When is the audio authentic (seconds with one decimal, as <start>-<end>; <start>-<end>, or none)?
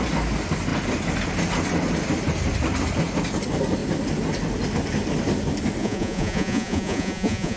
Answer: 0.0-5.8